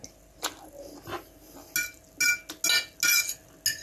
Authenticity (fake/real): real